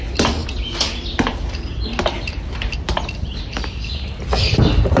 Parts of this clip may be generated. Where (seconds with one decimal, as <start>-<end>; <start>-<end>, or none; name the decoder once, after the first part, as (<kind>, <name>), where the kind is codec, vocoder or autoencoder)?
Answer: none